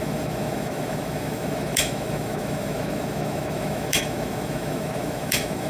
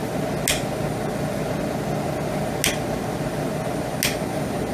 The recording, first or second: second